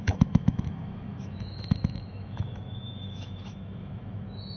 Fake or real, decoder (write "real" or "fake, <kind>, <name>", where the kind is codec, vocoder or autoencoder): fake, autoencoder, DAC-VAE